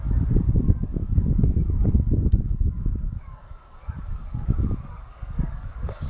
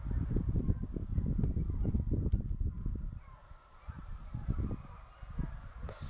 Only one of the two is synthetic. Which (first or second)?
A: first